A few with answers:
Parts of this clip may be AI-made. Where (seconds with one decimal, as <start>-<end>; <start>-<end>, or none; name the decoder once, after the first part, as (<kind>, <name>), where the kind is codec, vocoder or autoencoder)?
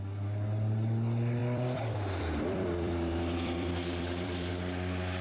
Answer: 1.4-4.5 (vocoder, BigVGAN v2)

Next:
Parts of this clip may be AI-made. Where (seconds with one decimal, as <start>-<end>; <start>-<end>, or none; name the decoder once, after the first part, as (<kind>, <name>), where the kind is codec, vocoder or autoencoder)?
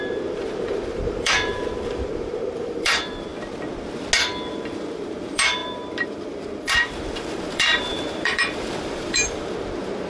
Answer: 0.0-3.3 (vocoder, BigVGAN v2); 4.5-10.1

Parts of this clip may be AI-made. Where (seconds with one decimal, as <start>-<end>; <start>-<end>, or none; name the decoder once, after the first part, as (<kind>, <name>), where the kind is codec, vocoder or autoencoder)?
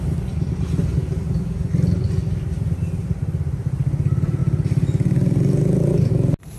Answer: none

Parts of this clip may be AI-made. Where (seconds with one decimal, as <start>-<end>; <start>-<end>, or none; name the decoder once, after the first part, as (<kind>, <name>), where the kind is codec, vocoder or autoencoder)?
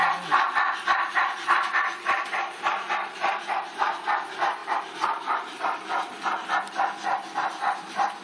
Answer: 0.5-8.2 (vocoder, BigVGAN v2)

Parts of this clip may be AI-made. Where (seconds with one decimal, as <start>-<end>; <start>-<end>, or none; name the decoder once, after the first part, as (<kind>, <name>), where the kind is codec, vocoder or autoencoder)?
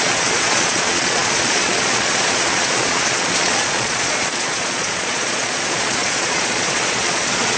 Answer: 0.0-7.6 (vocoder, Vocos)